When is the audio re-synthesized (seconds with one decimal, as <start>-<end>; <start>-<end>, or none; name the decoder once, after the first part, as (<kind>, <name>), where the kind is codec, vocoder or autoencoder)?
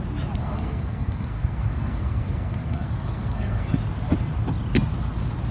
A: 0.4-3.7 (codec, SNAC)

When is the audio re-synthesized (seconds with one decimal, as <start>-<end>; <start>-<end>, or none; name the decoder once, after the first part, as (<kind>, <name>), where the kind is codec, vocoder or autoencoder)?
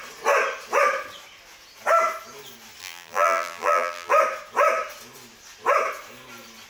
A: 2.8-4.1 (vocoder, BigVGAN v2)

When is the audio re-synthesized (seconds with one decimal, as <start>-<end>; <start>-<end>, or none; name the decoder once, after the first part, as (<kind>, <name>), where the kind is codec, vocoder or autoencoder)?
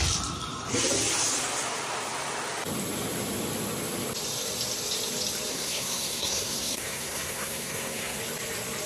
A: 5.5-8.2 (codec, SNAC)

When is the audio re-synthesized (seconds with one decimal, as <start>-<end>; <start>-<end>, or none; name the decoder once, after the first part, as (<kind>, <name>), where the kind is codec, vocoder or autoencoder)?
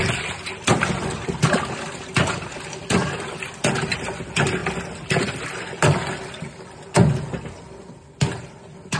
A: none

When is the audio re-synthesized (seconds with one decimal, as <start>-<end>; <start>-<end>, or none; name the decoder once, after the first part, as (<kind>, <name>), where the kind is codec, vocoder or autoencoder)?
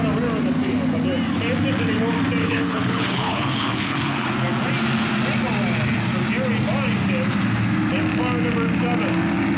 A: 2.4-4.3 (codec, HILCodec)